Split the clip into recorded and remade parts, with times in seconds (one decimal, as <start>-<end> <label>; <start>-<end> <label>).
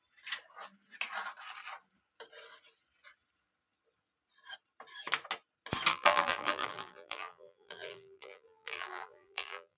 0.0-5.9 recorded; 5.9-9.8 remade